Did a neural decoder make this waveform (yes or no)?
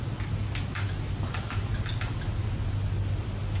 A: no